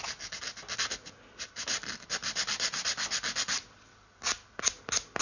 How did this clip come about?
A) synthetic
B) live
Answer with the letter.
B